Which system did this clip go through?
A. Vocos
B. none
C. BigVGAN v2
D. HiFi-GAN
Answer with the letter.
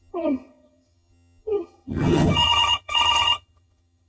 D